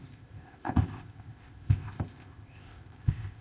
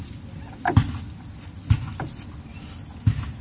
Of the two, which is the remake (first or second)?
first